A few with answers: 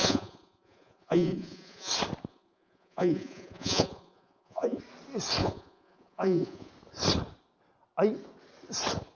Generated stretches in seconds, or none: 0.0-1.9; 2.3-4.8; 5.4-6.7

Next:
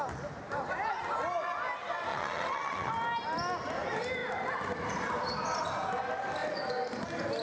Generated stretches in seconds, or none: 2.1-2.9

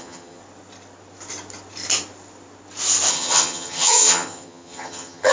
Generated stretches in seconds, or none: 0.0-0.4; 3.1-5.3

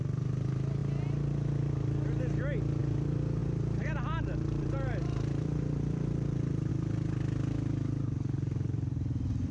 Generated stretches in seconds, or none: 3.4-6.7

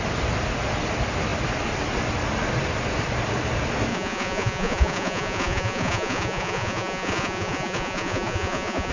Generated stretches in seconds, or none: 3.9-8.9